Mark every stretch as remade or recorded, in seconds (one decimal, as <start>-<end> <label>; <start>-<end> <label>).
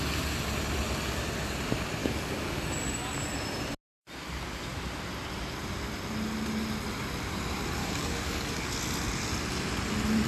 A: 0.0-2.0 recorded; 2.0-2.6 remade; 2.6-7.8 recorded; 7.8-8.7 remade; 8.7-10.3 recorded